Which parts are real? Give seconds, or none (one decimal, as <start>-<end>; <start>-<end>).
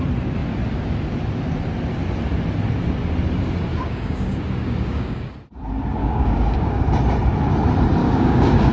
0.0-3.7; 5.3-6.0; 6.8-8.0